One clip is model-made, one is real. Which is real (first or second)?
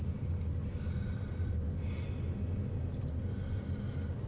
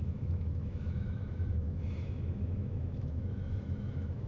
first